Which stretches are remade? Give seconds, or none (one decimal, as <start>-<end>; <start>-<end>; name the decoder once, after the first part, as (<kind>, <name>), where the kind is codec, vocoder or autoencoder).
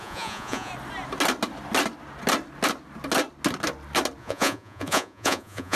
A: 0.0-0.7 (vocoder, Vocos); 4.2-5.8